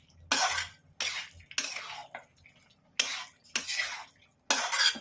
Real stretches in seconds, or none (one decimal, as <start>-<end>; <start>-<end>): 0.0-5.0